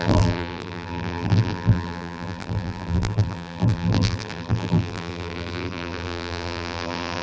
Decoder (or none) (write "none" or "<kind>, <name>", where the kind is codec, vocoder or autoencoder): vocoder, BigVGAN v2